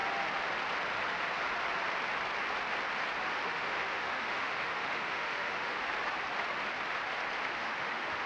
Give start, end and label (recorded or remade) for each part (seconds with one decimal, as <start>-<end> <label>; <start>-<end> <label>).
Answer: 0.0-3.3 recorded; 3.3-5.8 remade; 5.8-7.5 recorded; 7.5-8.3 remade